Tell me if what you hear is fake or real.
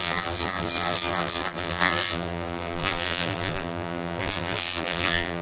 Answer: fake